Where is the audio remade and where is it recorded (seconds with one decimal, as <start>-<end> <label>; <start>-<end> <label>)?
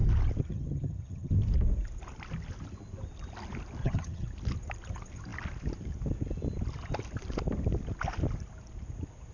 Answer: 0.0-0.4 recorded; 0.4-1.3 remade; 1.3-3.8 recorded; 3.8-4.3 remade; 4.3-9.3 recorded